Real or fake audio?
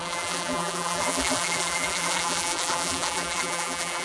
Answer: fake